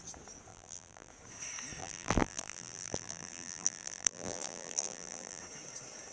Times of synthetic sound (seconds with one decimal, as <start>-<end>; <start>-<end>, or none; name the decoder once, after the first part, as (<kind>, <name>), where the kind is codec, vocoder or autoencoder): 0.5-1.1 (vocoder, BigVGAN v2); 1.8-5.4

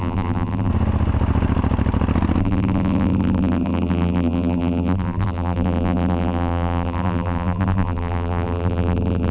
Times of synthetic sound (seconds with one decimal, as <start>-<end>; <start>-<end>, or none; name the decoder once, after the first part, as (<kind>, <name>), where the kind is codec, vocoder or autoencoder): 0.0-0.7 (vocoder, BigVGAN v2); 2.4-9.3